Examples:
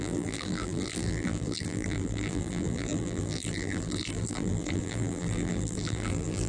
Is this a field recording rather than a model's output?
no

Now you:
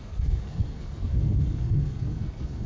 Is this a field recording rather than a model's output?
no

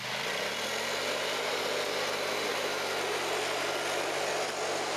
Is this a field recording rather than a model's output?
yes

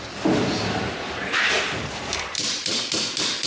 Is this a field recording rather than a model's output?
yes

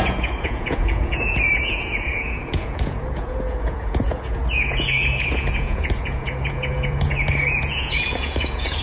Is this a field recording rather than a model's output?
no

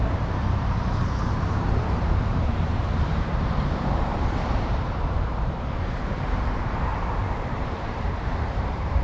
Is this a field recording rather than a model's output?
no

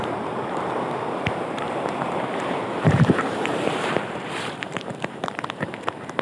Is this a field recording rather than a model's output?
no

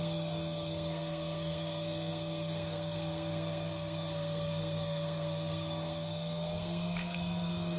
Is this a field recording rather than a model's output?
no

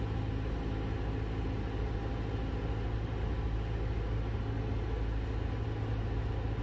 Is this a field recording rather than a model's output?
yes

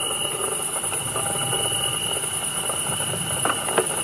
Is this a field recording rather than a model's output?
yes